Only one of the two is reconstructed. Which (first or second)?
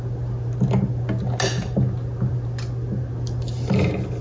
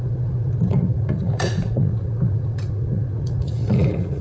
second